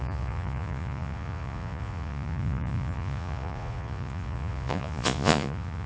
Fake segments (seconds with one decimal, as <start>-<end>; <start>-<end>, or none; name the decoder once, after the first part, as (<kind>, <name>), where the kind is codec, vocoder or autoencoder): 0.0-5.9 (vocoder, Vocos)